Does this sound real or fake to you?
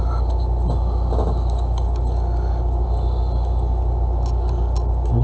real